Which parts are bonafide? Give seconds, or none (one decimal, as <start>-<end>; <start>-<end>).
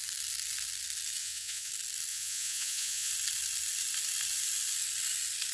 0.0-1.2; 1.7-2.1; 3.1-5.5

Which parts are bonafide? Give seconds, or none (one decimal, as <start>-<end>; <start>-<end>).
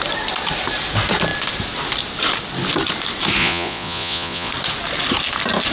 0.0-3.4; 4.5-5.7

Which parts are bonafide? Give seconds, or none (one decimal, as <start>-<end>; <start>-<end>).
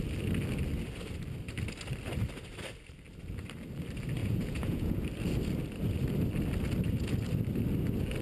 0.0-4.2; 5.0-8.2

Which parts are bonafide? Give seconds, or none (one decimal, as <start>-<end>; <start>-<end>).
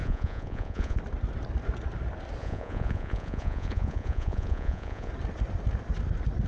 1.0-2.4; 5.1-6.5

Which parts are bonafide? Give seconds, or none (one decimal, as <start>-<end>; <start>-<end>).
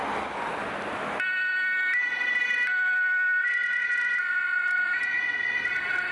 0.0-3.4; 5.4-6.1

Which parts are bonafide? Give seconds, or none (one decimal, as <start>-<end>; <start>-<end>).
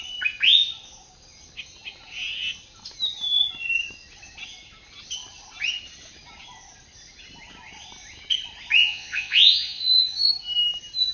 0.0-8.8; 10.3-11.1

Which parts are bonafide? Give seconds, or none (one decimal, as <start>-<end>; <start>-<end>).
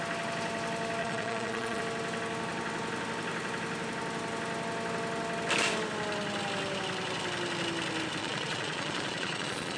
0.0-1.0; 1.8-8.2